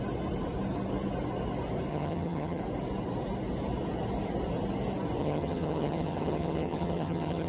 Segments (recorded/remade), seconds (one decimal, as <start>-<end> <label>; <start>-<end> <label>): 0.0-1.9 recorded; 1.9-2.6 remade; 2.6-5.2 recorded; 5.2-7.5 remade